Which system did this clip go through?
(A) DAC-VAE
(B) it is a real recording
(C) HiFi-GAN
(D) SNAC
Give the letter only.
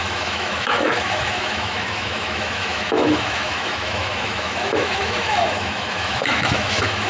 A